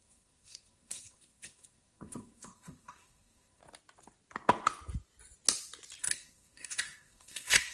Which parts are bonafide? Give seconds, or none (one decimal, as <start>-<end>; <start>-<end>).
3.6-6.0